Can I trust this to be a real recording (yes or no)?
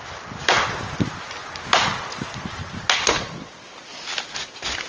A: yes